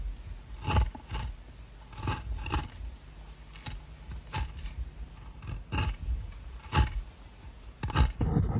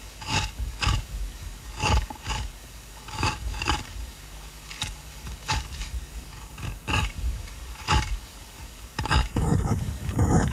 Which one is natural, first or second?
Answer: first